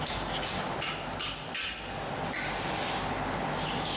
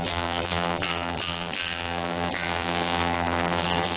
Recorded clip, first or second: first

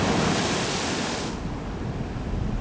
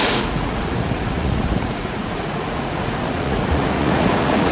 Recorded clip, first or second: first